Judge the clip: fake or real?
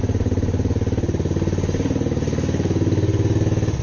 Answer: real